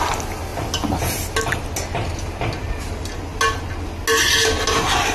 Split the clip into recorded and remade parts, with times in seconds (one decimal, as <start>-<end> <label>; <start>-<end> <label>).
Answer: 0.0-5.1 recorded

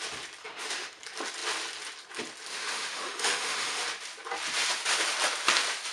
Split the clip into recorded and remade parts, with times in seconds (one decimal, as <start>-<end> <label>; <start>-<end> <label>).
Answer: 0.0-0.4 recorded; 0.4-1.0 remade; 1.0-2.5 recorded; 2.5-3.8 remade; 3.8-5.9 recorded

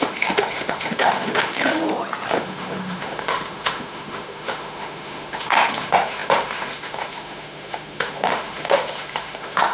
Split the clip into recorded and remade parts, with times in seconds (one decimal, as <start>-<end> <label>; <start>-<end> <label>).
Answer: 0.0-1.8 remade; 1.8-2.3 recorded; 2.3-9.7 remade